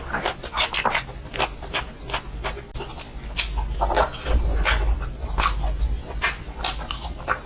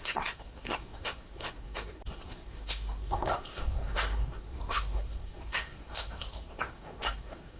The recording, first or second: first